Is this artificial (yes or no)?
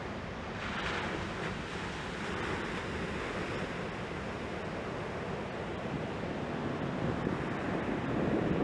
no